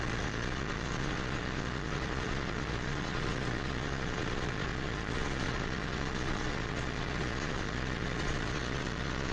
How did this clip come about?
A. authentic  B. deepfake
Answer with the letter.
B